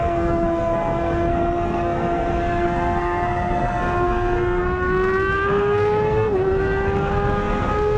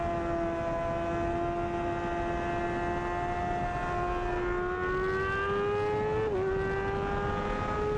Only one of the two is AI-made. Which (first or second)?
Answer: first